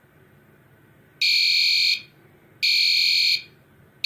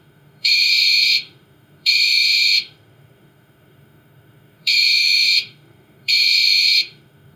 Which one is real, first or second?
first